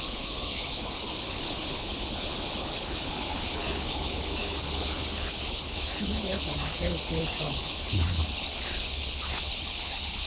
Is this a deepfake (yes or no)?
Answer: yes